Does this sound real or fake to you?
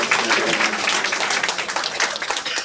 real